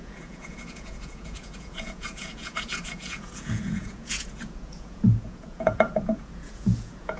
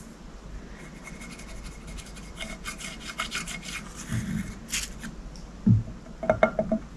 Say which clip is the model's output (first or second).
first